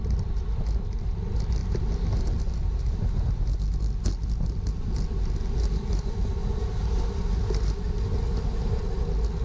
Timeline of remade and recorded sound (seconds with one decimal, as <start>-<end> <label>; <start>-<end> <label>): 0.0-9.4 recorded